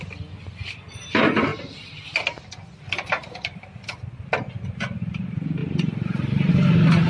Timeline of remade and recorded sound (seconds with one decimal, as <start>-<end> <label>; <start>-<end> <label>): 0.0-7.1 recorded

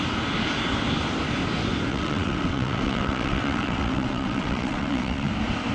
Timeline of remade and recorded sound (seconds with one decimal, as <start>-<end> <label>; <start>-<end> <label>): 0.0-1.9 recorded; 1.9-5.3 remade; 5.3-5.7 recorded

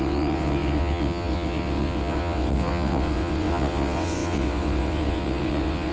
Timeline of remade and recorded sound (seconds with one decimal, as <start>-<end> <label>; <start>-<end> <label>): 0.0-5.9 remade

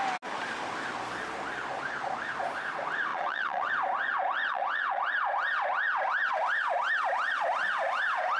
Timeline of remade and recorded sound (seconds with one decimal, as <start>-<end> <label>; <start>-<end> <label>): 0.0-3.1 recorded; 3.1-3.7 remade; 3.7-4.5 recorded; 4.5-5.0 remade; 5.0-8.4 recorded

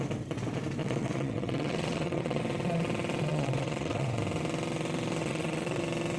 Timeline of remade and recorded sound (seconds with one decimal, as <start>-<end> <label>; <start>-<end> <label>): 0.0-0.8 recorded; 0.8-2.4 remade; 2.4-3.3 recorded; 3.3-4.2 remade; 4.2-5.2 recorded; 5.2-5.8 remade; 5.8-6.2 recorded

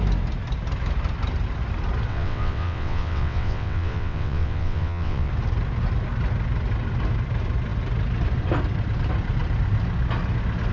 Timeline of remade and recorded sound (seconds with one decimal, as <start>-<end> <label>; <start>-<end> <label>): 0.0-2.1 recorded; 2.1-5.3 remade; 5.3-10.7 recorded

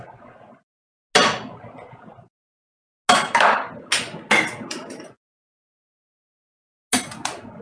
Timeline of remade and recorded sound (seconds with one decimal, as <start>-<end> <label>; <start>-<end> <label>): 0.0-7.6 recorded

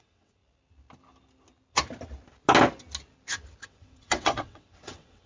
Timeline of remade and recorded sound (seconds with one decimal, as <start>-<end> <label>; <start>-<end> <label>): 0.0-0.4 remade; 0.4-3.6 recorded; 3.6-5.3 remade